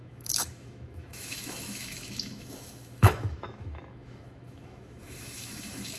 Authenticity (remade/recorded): remade